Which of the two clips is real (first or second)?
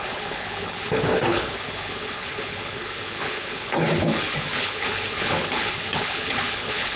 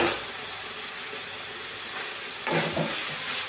second